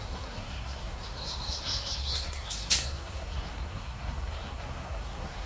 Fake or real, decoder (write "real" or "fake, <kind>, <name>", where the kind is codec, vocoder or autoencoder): fake, codec, SNAC